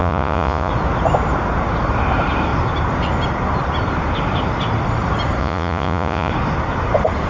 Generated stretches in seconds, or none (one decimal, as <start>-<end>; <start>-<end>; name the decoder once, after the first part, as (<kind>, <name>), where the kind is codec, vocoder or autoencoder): 0.0-0.7 (vocoder, Vocos); 5.4-6.3